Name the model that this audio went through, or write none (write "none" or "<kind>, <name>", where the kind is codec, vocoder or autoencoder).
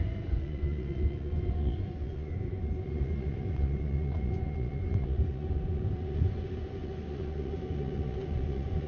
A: vocoder, Vocos